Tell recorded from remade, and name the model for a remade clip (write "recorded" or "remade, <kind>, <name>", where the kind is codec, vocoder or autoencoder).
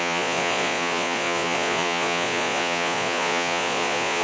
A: remade, vocoder, Vocos